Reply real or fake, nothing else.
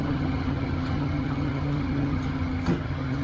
fake